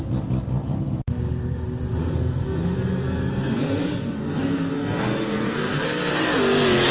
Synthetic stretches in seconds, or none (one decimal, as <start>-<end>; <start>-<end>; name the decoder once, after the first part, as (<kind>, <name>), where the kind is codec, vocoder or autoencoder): 2.0-6.1 (codec, SNAC)